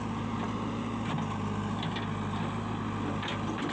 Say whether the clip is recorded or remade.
recorded